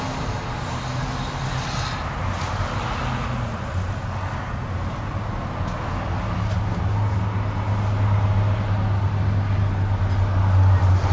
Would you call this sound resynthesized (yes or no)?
no